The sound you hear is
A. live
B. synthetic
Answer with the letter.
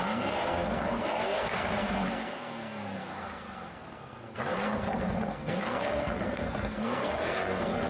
B